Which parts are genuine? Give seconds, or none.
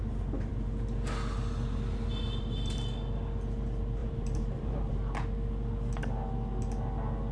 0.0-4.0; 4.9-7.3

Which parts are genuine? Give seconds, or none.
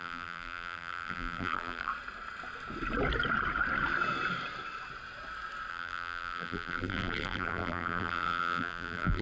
1.9-5.7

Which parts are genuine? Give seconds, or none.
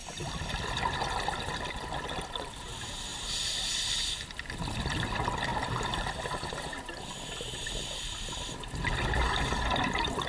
0.0-3.1; 4.8-5.5; 8.5-10.3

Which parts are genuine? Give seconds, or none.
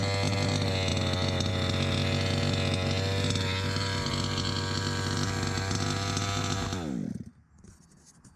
0.0-8.4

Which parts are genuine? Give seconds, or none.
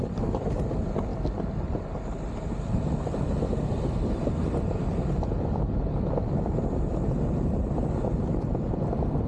0.0-9.3